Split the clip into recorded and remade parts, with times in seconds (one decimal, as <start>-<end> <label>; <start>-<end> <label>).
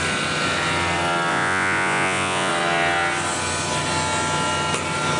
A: 0.0-1.3 recorded; 1.3-2.5 remade; 2.5-5.2 recorded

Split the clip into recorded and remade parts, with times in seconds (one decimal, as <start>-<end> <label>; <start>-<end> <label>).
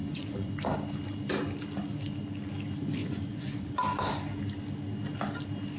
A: 0.0-0.5 remade; 0.5-3.0 recorded; 3.0-3.7 remade; 3.7-5.8 recorded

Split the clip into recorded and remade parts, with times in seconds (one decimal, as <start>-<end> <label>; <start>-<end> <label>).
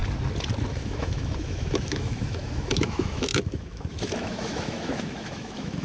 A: 0.0-0.7 recorded; 0.7-5.8 remade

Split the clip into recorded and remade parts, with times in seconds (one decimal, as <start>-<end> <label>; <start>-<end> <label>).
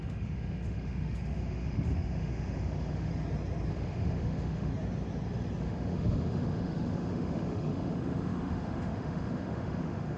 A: 0.0-3.1 remade; 3.1-3.7 recorded; 3.7-4.7 remade; 4.7-5.6 recorded; 5.6-10.2 remade